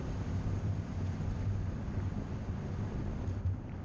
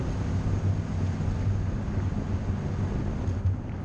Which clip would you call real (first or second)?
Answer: second